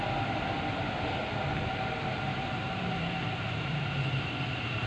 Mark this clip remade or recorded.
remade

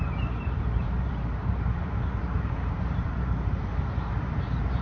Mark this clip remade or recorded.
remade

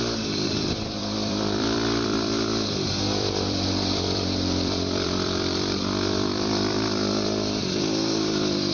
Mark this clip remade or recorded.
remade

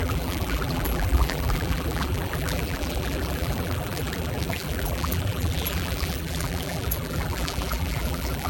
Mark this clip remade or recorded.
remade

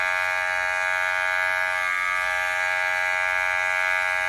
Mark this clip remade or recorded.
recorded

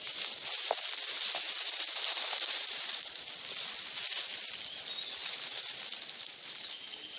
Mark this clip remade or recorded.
recorded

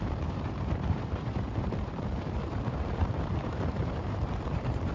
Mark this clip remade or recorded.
remade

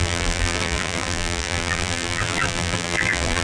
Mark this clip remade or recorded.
remade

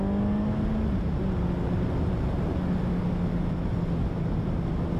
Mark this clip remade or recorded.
recorded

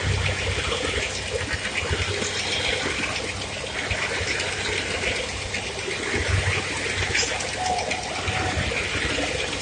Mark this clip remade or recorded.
recorded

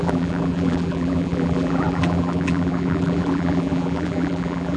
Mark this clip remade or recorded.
remade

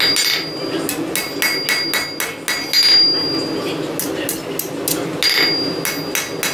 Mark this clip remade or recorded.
recorded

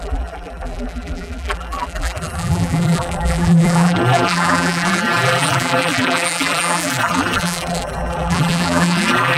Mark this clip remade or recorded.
remade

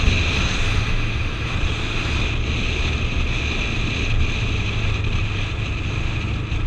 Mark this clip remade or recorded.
recorded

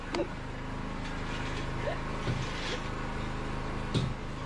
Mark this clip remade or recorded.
recorded